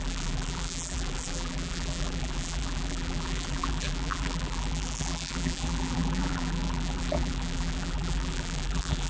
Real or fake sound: fake